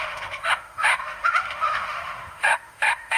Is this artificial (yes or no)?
yes